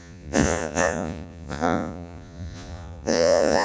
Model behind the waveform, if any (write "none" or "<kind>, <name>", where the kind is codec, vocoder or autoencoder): vocoder, Vocos